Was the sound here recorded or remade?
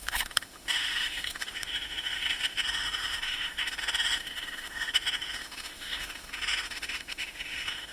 remade